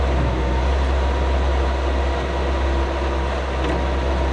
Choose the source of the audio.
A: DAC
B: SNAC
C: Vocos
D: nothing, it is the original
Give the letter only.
D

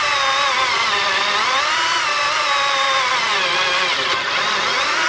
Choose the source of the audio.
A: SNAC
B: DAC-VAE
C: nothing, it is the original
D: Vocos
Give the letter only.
C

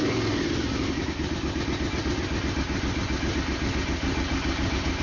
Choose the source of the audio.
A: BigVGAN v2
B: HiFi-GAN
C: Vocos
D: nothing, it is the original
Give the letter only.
D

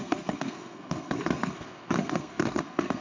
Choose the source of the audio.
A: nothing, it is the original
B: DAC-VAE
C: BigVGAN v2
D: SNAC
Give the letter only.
D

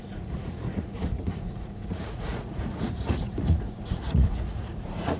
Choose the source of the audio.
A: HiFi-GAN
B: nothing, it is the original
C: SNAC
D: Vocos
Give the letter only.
D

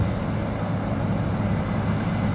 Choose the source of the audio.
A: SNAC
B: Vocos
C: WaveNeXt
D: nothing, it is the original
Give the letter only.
D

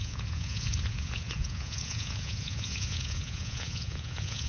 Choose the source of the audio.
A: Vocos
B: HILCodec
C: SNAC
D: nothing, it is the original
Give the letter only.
A